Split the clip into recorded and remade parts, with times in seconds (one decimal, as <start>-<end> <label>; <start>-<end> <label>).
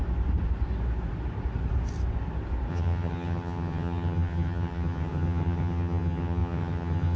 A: 0.0-2.7 recorded; 2.7-7.2 remade